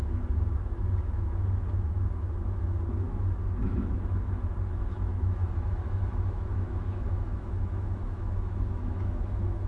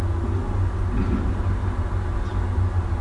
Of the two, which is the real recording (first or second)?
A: second